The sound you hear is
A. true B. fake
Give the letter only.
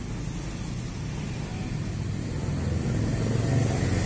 A